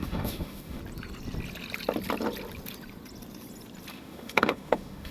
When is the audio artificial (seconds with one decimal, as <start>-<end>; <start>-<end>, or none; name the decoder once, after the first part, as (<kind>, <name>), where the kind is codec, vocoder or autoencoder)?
0.0-0.8 (autoencoder, DAC-VAE); 3.9-5.1